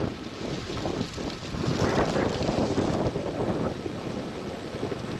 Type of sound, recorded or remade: recorded